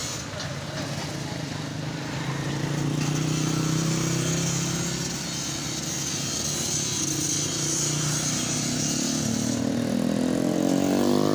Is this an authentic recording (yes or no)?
yes